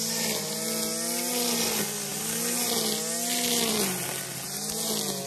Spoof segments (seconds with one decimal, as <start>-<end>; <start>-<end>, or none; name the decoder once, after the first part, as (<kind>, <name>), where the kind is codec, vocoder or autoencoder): none